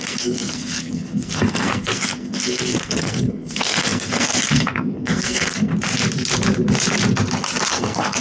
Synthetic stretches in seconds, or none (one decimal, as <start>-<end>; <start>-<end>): 0.0-5.7; 7.7-8.2